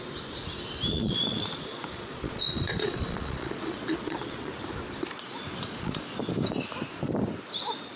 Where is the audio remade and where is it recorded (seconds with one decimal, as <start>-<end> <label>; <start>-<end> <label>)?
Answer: 0.0-0.9 recorded; 0.9-4.5 remade; 4.5-5.5 recorded; 5.5-6.2 remade; 6.2-8.0 recorded